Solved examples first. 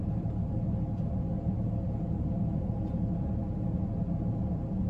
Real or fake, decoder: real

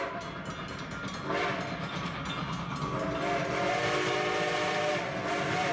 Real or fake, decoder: real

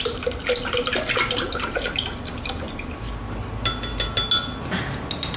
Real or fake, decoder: real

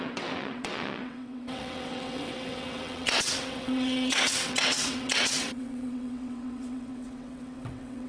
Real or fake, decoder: fake, vocoder, WaveNeXt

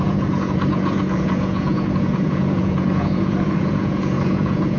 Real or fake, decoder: fake, vocoder, Vocos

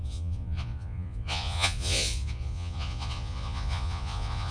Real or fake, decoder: fake, vocoder, Vocos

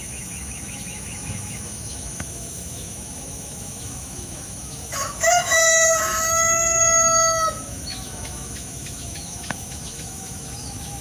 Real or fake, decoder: fake, autoencoder, DAC-VAE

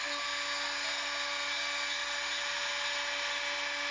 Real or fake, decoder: real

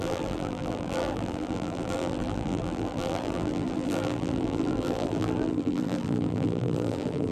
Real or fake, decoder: fake, vocoder, BigVGAN v2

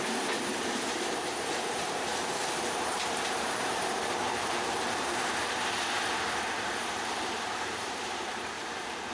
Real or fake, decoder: fake, vocoder, BigVGAN v2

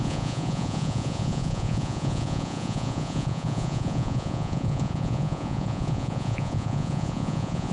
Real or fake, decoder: fake, vocoder, Vocos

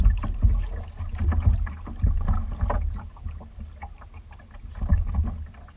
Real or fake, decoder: real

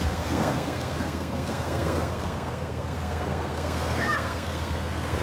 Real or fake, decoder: fake, codec, SNAC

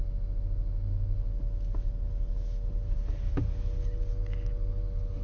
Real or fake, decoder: real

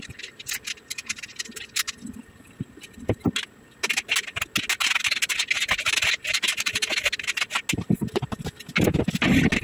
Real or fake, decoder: real